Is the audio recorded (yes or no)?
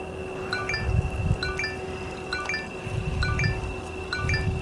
yes